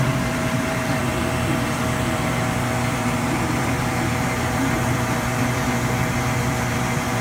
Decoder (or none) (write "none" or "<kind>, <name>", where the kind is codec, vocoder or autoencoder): vocoder, BigVGAN v2